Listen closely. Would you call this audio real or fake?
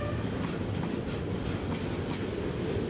real